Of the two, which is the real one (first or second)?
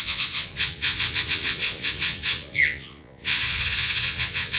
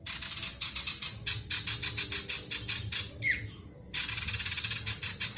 second